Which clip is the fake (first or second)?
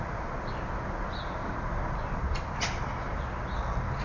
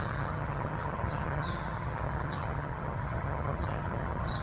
second